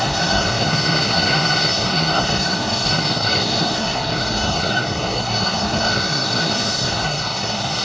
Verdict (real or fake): fake